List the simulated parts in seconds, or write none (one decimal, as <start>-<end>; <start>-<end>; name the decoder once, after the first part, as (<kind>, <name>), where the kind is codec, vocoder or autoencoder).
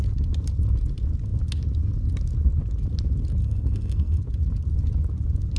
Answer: 3.4-4.2 (codec, SNAC)